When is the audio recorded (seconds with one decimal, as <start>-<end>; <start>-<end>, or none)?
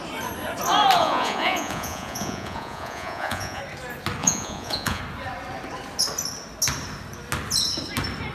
0.0-1.0; 3.6-4.2; 5.0-8.3